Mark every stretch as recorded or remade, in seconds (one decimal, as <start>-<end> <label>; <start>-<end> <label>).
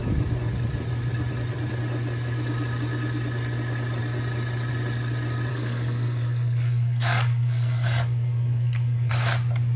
0.0-5.5 recorded; 5.5-9.1 remade; 9.1-9.8 recorded